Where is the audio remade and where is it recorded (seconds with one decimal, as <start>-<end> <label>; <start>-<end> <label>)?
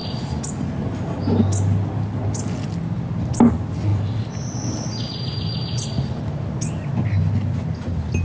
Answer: 0.0-8.2 recorded